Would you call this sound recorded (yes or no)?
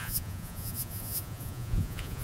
no